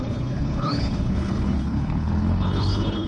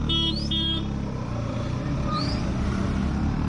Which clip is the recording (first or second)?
second